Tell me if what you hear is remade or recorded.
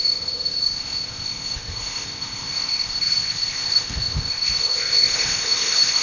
remade